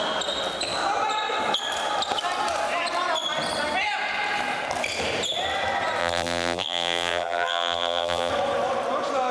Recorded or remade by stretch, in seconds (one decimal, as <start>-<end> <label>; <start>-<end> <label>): 0.0-6.0 recorded; 6.0-8.3 remade; 8.3-9.3 recorded